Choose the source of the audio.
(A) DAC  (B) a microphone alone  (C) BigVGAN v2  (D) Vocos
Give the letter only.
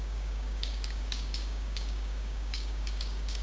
A